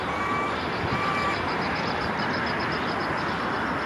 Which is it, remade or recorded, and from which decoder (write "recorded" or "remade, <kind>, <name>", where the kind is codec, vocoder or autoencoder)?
recorded